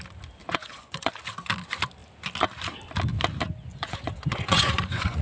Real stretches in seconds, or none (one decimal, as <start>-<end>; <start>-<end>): 0.0-0.4; 1.1-3.7